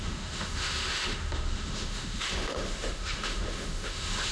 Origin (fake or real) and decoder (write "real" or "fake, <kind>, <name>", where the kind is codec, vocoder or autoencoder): fake, autoencoder, DAC-VAE